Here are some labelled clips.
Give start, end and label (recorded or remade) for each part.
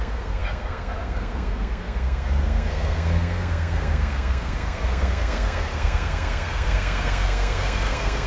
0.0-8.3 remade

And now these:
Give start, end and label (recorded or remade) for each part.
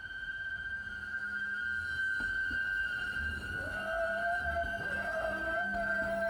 0.0-1.0 recorded; 1.0-1.6 remade; 1.6-6.3 recorded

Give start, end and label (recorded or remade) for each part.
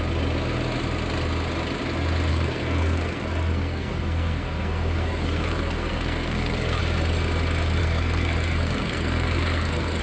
0.0-2.3 recorded; 2.3-6.8 remade; 6.8-7.8 recorded; 7.8-10.0 remade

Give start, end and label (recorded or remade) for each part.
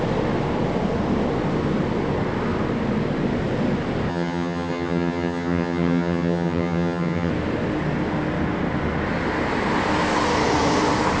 0.0-4.1 recorded; 4.1-7.3 remade; 7.3-11.2 recorded